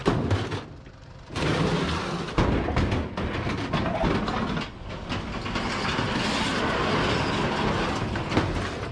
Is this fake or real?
real